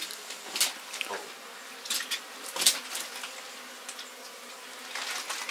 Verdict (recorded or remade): recorded